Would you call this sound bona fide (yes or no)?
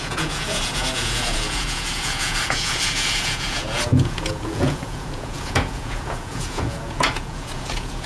no